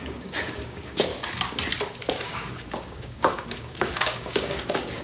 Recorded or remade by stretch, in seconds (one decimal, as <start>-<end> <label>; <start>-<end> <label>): 0.0-1.1 remade; 1.1-2.0 recorded; 2.0-5.0 remade